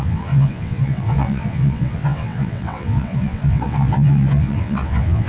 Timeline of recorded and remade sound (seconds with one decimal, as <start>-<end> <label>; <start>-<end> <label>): 0.0-5.3 remade